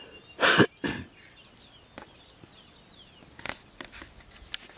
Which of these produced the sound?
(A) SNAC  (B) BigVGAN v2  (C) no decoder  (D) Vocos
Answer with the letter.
C